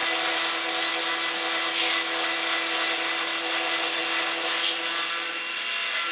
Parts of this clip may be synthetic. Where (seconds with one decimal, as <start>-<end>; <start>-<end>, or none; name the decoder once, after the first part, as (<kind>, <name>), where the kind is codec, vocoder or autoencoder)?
none